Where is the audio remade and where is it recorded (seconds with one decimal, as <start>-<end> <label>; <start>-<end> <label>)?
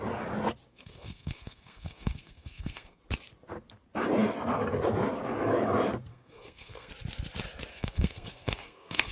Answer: 0.0-0.7 recorded; 0.7-3.0 remade; 3.0-6.1 recorded; 6.1-6.9 remade; 6.9-7.7 recorded; 7.7-9.1 remade